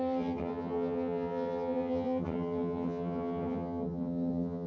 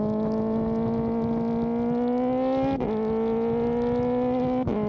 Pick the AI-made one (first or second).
first